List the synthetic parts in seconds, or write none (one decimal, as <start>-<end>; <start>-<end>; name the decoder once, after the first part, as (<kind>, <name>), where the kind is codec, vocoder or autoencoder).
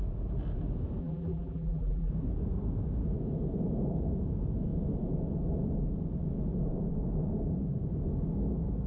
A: 1.0-2.1 (vocoder, BigVGAN v2)